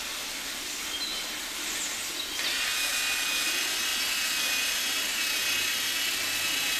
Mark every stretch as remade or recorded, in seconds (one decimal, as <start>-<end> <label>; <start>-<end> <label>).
0.0-3.9 recorded; 3.9-4.8 remade; 4.8-6.8 recorded